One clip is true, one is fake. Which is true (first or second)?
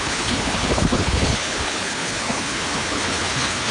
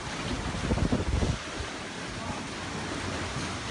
second